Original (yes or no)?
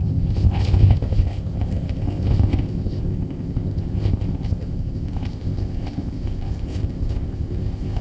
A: no